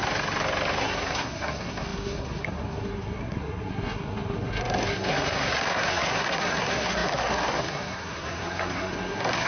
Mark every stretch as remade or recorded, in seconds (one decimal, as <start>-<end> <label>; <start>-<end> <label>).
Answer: 0.0-0.8 recorded; 0.8-9.5 remade